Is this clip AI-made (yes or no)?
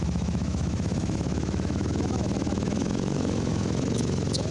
yes